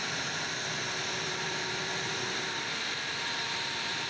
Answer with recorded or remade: remade